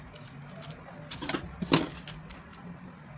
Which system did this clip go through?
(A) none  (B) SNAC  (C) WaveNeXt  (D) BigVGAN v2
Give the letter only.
A